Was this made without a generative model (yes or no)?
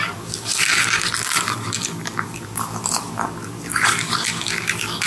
no